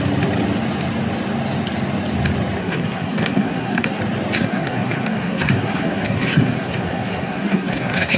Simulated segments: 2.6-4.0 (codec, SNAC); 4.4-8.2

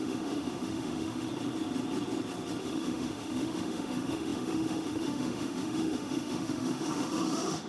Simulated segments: 0.0-1.3 (autoencoder, DAC-VAE); 2.6-7.7

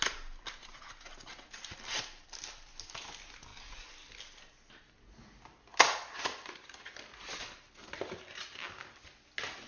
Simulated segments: none

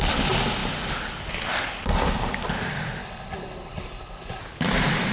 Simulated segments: 3.0-4.4 (codec, HILCodec)